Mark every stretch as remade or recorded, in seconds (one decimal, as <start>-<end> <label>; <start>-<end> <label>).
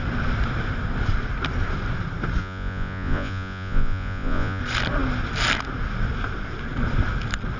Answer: 0.0-2.4 recorded; 2.4-4.6 remade; 4.6-7.6 recorded